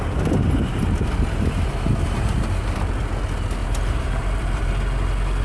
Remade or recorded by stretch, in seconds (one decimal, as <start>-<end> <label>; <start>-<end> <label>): 0.0-0.7 recorded; 0.7-2.9 remade; 2.9-3.6 recorded; 3.6-4.7 remade; 4.7-5.4 recorded